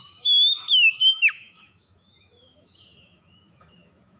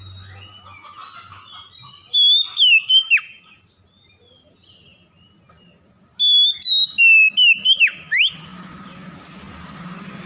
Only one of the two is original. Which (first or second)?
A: second